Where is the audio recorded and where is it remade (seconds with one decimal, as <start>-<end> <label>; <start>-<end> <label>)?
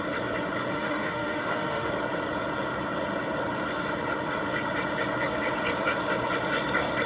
0.0-0.7 recorded; 0.7-1.9 remade; 1.9-7.1 recorded